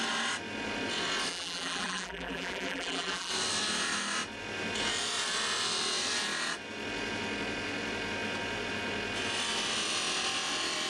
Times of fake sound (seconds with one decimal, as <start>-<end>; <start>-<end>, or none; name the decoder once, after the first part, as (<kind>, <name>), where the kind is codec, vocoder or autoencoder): 1.3-3.3 (vocoder, BigVGAN v2)